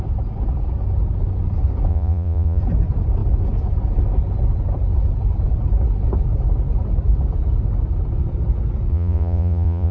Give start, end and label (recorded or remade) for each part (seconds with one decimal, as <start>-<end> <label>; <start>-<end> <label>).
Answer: 0.0-1.9 recorded; 1.9-2.6 remade; 2.6-8.9 recorded; 8.9-9.9 remade